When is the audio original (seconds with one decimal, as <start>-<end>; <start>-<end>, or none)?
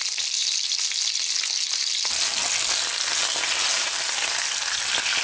0.0-3.7; 4.3-5.2